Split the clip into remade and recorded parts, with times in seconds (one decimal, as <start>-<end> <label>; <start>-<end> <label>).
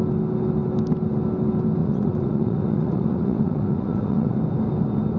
0.0-1.8 recorded; 1.8-4.4 remade; 4.4-5.2 recorded